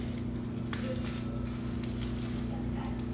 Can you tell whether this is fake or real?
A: real